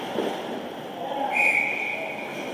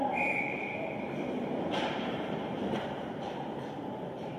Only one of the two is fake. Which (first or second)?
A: second